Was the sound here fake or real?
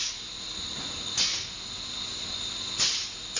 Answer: real